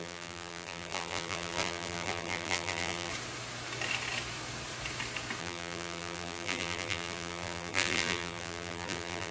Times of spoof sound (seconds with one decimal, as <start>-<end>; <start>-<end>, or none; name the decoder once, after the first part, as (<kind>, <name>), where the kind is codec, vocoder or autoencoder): 0.0-3.1 (vocoder, BigVGAN v2); 5.4-9.3